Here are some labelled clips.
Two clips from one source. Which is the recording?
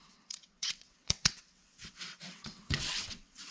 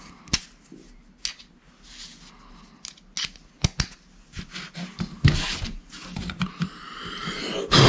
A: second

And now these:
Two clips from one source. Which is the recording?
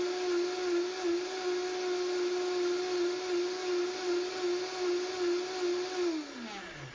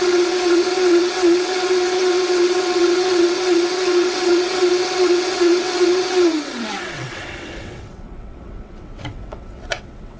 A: first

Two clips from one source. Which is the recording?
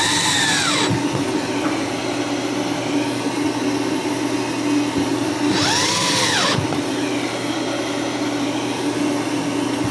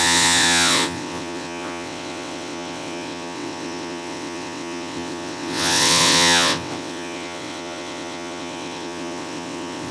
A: first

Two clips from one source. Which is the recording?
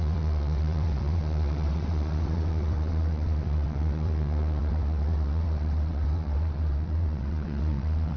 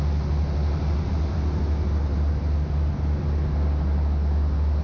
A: second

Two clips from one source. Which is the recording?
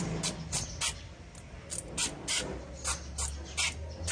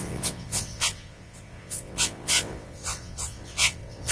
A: first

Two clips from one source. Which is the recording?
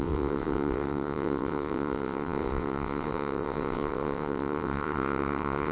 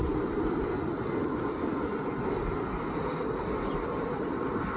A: second